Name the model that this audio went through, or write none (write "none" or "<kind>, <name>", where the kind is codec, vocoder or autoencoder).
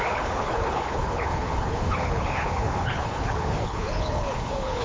codec, HILCodec